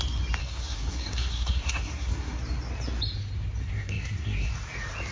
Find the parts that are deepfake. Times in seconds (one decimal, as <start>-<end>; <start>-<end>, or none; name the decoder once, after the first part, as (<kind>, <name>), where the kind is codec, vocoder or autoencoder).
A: 0.4-2.4 (codec, SNAC); 3.6-4.5